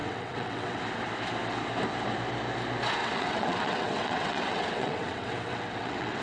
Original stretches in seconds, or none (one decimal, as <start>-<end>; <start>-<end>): 0.8-3.0